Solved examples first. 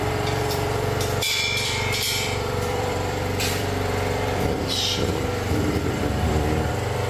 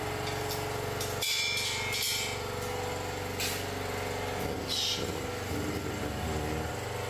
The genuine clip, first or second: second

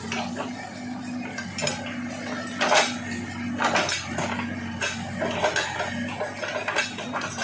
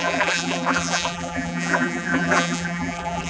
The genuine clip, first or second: first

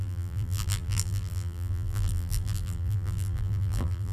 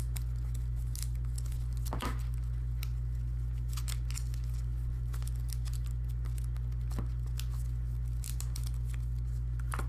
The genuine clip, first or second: second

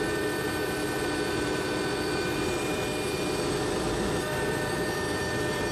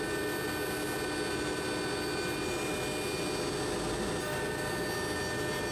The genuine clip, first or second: second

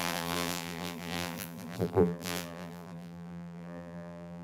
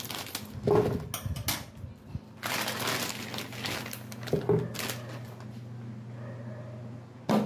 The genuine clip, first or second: second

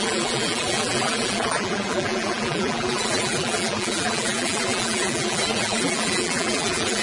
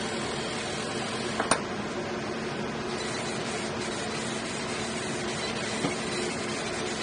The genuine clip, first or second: second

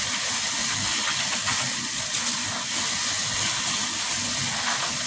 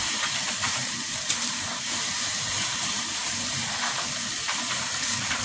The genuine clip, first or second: first